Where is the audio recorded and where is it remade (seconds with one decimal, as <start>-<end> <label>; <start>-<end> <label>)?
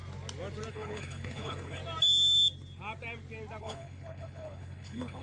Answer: 0.0-0.7 recorded; 0.7-1.8 remade; 1.8-3.6 recorded; 3.6-5.2 remade